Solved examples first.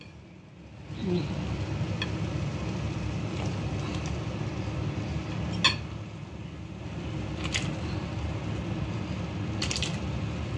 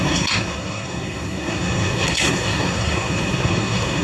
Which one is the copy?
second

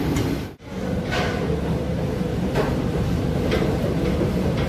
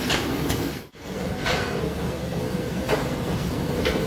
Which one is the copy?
second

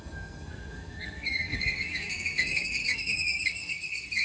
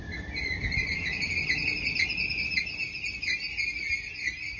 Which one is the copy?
first